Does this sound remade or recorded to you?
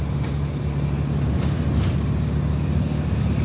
recorded